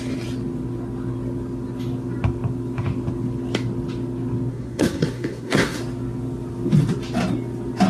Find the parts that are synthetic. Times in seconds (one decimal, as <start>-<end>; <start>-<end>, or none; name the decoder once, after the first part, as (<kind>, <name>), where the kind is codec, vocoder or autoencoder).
4.5-5.8 (codec, SNAC)